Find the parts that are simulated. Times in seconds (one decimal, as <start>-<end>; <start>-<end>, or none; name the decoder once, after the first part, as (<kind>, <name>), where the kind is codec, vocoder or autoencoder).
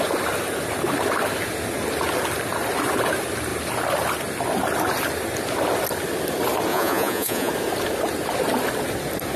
6.7-7.5 (vocoder, Vocos)